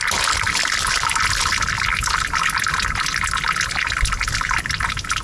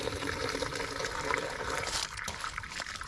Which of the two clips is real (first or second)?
first